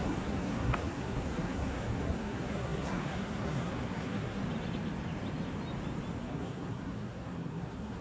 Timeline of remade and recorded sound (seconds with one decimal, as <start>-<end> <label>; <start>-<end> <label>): 0.0-4.4 remade; 4.4-6.2 recorded; 6.2-8.0 remade